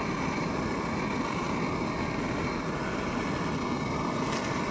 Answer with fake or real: real